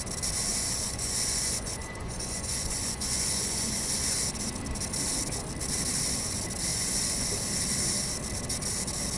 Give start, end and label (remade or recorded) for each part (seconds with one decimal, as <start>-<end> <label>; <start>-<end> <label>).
0.0-0.5 recorded; 0.5-4.2 remade; 4.2-6.7 recorded; 6.7-7.3 remade; 7.3-9.2 recorded